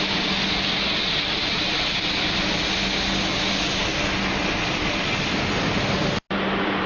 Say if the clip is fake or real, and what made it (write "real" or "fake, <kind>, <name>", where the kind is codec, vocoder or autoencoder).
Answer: real